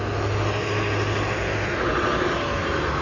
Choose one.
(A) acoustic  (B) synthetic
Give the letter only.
A